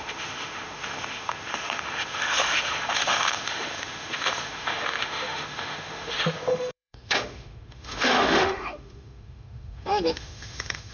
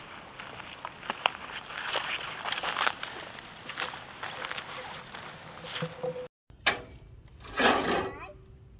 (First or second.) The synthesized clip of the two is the first